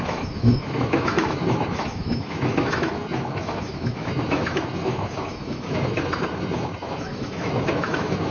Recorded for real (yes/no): no